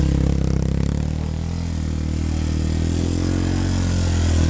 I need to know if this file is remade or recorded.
recorded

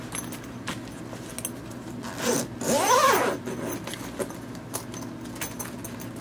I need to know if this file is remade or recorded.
recorded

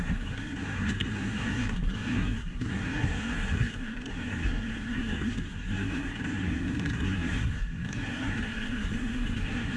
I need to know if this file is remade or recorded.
remade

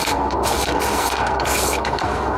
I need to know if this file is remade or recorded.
remade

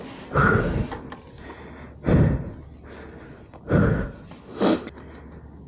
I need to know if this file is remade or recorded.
recorded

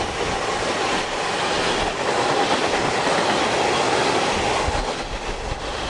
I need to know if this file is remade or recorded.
recorded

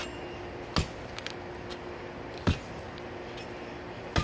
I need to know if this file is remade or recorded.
recorded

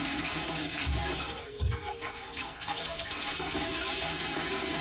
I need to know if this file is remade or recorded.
remade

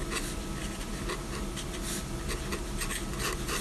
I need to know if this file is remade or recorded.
recorded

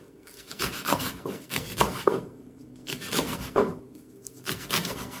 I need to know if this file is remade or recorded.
remade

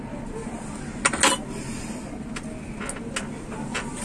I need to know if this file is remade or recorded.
recorded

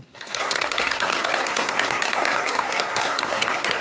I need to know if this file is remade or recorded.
remade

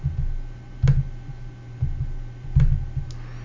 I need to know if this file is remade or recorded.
recorded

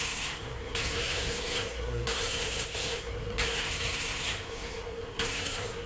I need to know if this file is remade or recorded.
remade